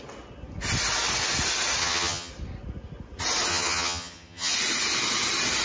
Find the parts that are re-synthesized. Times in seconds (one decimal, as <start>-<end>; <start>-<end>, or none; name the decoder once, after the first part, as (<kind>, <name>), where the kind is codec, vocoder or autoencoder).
1.8-2.3 (vocoder, HiFi-GAN); 3.5-4.5